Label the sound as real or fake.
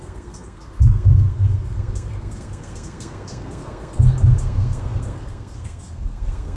fake